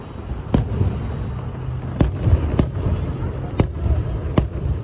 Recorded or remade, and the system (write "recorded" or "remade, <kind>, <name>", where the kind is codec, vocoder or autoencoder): recorded